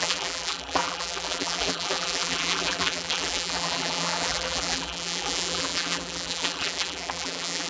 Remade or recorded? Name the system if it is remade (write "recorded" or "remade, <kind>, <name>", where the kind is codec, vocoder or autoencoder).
remade, vocoder, BigVGAN v2